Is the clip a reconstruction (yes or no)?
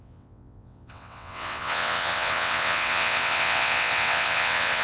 yes